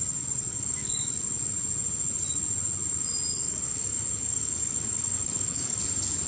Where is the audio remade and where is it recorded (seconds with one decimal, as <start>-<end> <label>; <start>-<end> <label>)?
0.0-0.5 recorded; 0.5-1.1 remade; 1.1-3.3 recorded; 3.3-5.8 remade; 5.8-6.3 recorded